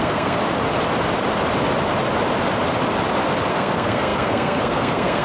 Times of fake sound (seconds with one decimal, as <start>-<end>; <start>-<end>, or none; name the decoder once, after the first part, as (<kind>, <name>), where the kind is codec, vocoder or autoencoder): 0.0-0.4 (codec, SNAC); 3.5-5.2